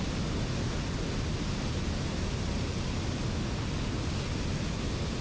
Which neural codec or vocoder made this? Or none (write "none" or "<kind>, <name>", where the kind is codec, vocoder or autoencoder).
none